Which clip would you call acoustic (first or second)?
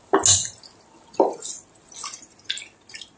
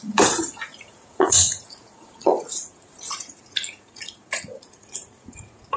first